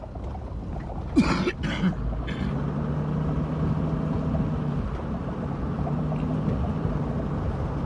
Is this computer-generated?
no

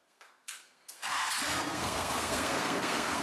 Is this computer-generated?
yes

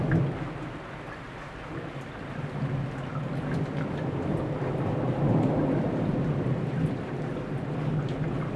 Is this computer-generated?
no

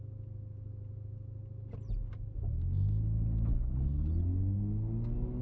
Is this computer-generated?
no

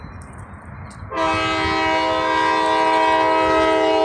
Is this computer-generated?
no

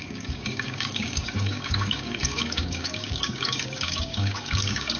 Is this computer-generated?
yes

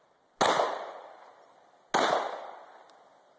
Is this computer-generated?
no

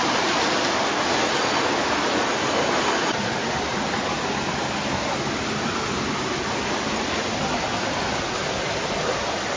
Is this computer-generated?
no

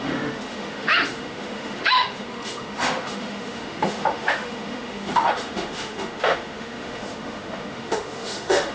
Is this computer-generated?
yes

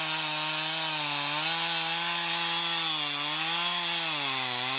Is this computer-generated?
no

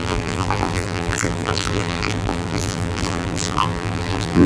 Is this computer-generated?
yes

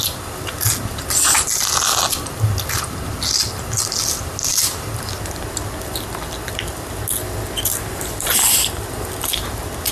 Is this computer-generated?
no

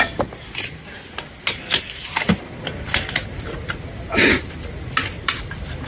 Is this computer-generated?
no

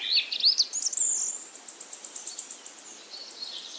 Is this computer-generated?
no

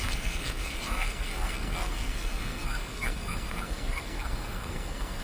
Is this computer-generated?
yes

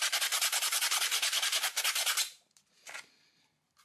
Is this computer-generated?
no